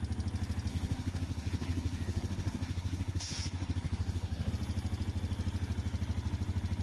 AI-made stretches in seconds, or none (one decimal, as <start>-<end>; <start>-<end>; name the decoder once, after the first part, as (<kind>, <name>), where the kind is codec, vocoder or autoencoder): 0.7-4.5 (codec, SNAC)